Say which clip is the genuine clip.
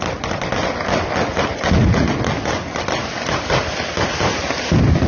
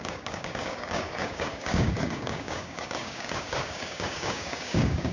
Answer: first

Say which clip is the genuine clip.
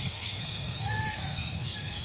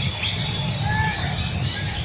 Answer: second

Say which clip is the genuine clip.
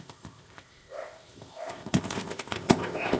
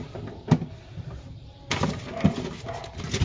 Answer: second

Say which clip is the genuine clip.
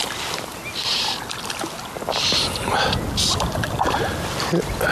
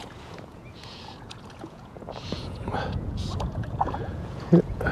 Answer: first